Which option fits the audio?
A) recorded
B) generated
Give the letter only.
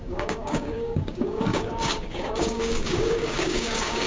B